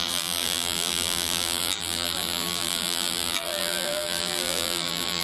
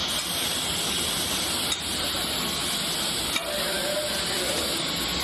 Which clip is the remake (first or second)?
first